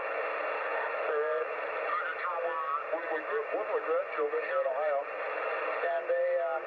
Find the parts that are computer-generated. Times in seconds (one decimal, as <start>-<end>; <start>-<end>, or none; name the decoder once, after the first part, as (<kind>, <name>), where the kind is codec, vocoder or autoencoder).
none